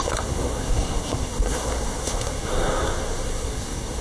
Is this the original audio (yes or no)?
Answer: no